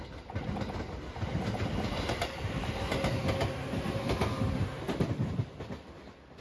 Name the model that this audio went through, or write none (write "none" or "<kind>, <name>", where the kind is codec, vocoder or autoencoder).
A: none